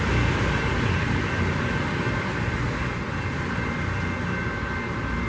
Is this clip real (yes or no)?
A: no